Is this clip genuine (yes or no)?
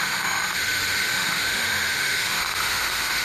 no